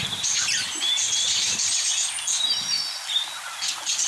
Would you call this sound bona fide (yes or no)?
yes